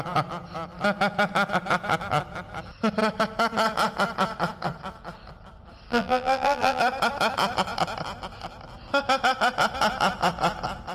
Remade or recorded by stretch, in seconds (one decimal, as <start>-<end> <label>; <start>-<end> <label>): 0.0-5.9 recorded; 5.9-6.8 remade; 6.8-10.9 recorded